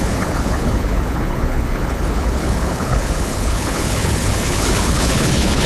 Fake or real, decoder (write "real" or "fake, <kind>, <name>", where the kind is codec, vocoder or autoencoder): fake, codec, HILCodec